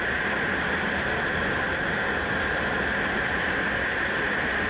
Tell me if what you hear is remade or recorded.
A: recorded